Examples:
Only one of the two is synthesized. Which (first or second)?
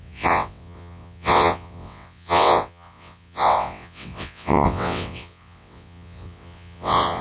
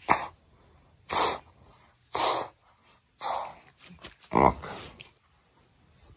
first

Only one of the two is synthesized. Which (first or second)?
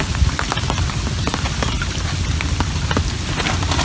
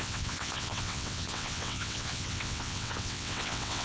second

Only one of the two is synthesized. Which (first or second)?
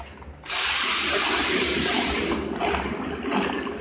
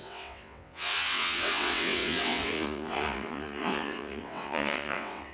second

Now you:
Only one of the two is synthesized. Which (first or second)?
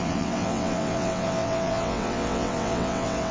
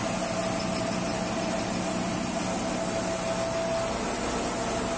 first